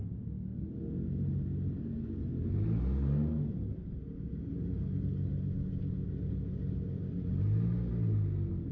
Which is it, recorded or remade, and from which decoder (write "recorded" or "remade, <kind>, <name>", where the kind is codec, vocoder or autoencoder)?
recorded